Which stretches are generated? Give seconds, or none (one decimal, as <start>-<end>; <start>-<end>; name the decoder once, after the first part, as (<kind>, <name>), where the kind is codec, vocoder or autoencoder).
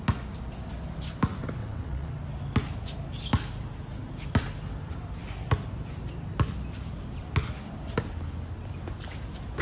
1.6-2.1 (vocoder, WaveNeXt)